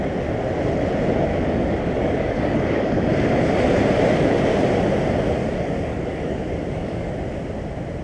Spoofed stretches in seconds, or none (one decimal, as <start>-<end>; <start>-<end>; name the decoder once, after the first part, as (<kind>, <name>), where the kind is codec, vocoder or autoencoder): 1.3-3.1 (codec, DAC); 5.4-7.1